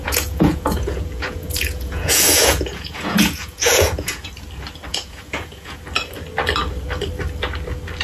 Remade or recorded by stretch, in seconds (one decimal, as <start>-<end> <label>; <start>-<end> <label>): 0.0-4.3 remade; 4.3-4.9 recorded; 4.9-5.8 remade; 5.8-8.0 recorded